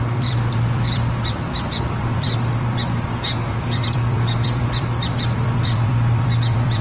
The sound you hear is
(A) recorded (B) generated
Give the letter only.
B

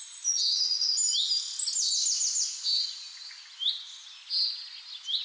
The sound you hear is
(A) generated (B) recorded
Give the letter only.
B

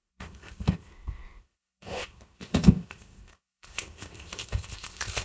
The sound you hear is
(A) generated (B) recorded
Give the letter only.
A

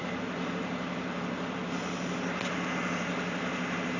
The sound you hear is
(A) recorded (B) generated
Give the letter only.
A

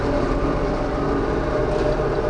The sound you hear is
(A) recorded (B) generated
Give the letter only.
A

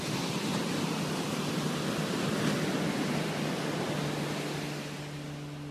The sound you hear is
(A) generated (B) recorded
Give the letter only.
B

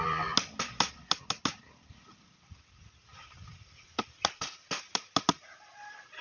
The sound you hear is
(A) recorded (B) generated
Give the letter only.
A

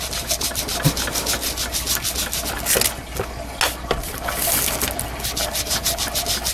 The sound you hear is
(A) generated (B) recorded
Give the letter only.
B